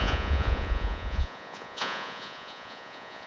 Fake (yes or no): yes